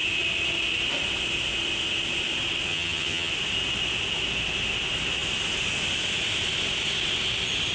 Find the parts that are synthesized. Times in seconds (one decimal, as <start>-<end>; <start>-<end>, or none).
2.7-3.3